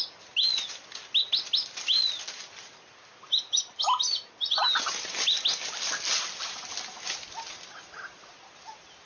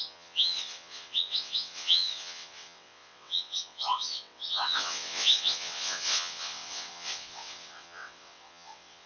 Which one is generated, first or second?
second